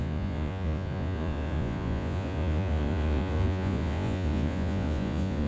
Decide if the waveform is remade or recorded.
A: remade